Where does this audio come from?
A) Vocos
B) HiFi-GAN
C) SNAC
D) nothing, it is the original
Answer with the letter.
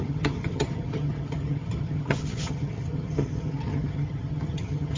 B